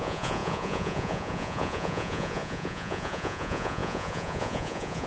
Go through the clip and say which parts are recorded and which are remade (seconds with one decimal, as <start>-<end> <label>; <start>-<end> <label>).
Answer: 0.0-5.1 remade